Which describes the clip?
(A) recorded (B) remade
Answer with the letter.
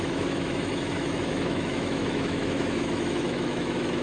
B